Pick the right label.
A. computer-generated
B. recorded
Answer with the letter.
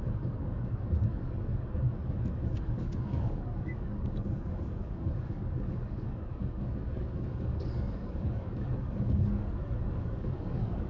A